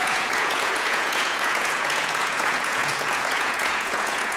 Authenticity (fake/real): fake